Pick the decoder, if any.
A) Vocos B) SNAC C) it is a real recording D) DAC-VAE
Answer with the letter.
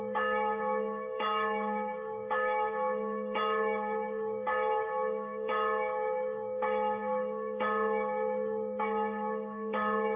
D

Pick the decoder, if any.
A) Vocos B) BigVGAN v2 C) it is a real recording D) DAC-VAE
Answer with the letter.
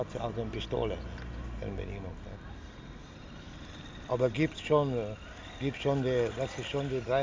C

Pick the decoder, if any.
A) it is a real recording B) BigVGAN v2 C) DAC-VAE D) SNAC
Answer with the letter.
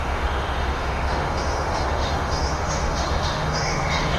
C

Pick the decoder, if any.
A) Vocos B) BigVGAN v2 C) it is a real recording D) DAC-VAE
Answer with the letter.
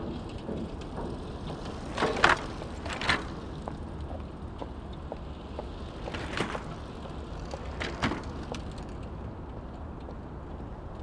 C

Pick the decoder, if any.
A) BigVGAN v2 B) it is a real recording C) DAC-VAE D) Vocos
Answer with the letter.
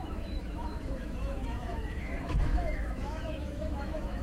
C